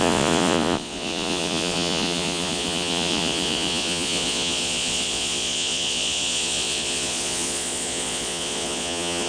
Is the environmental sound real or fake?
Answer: fake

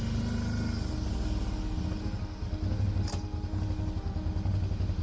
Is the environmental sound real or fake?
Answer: real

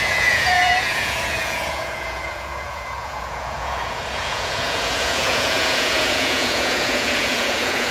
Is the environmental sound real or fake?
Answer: fake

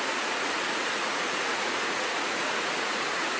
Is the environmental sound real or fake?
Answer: fake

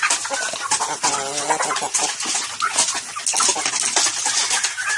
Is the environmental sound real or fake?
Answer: real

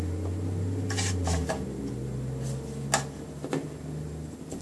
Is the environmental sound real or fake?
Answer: real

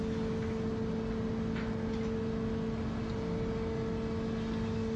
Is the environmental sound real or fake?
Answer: real